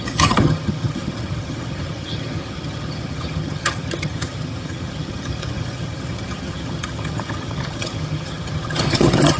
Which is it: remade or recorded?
remade